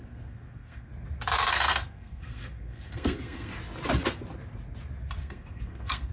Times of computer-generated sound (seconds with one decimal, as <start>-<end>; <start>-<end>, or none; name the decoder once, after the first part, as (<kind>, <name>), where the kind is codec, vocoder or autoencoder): 0.0-0.9 (codec, SNAC); 1.5-3.5; 5.2-6.1